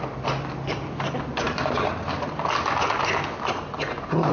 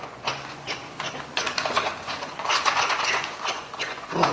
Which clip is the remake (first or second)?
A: second